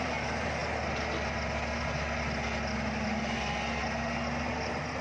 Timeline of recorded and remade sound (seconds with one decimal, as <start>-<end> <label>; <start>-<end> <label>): 0.0-0.6 remade; 0.6-1.8 recorded; 1.8-3.8 remade; 3.8-4.4 recorded; 4.4-5.0 remade